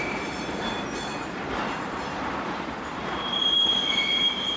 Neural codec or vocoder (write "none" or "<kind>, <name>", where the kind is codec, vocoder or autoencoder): vocoder, BigVGAN v2